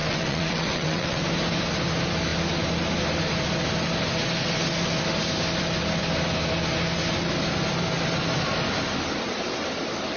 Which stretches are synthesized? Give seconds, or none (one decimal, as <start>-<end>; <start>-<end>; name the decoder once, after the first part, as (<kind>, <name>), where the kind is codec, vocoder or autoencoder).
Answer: 0.0-1.2 (vocoder, WaveNeXt)

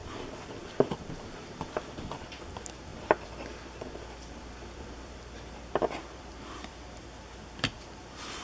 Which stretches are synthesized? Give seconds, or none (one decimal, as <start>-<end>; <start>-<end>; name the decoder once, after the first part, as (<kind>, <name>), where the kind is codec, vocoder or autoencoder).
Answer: 0.0-2.4 (vocoder, BigVGAN v2); 2.9-7.0

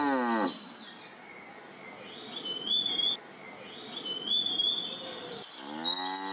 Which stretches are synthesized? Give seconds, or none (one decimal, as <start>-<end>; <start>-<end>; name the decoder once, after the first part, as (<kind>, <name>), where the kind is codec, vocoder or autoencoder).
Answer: none